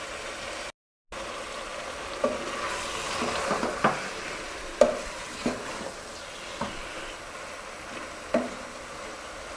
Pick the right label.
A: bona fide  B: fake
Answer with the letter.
A